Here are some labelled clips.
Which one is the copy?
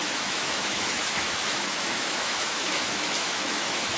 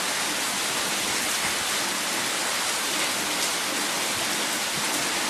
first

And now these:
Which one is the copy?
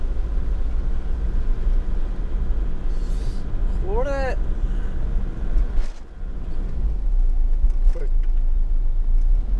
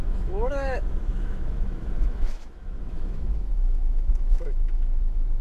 second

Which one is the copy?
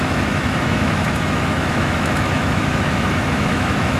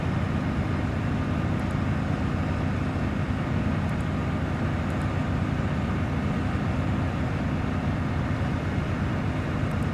first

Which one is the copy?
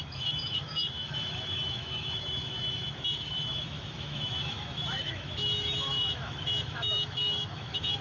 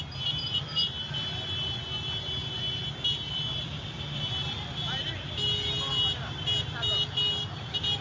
first